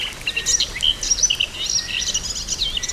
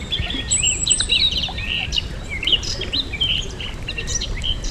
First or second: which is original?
first